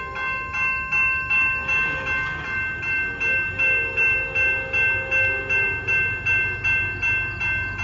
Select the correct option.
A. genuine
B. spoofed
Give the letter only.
A